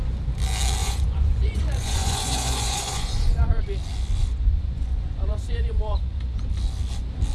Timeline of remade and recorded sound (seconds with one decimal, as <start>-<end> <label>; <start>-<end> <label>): 0.0-0.8 recorded; 0.8-3.6 remade; 3.6-4.2 recorded; 4.2-6.4 remade; 6.4-7.3 recorded